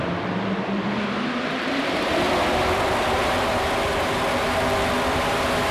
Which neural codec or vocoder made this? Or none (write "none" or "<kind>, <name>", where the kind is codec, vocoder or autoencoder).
none